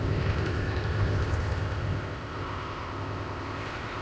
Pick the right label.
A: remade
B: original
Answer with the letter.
A